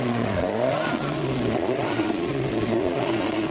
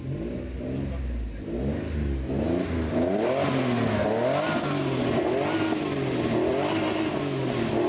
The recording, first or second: second